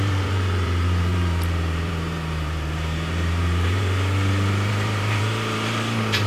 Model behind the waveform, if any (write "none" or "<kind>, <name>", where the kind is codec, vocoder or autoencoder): vocoder, BigVGAN v2